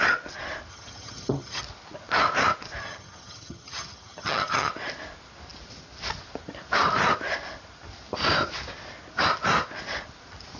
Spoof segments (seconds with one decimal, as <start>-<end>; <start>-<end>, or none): 0.7-1.6; 2.8-4.7